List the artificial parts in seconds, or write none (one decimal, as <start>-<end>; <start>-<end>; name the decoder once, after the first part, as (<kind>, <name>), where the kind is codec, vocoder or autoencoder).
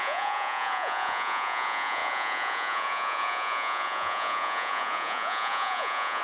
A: 0.0-6.2 (vocoder, Vocos)